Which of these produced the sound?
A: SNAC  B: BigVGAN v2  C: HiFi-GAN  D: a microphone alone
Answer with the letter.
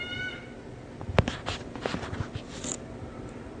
D